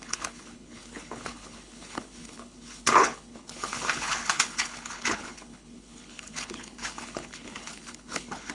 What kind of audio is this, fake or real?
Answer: fake